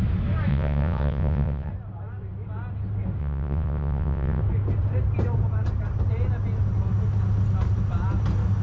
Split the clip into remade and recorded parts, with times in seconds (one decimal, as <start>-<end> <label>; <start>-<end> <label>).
0.0-0.5 recorded; 0.5-1.7 remade; 1.7-3.2 recorded; 3.2-4.4 remade; 4.4-8.6 recorded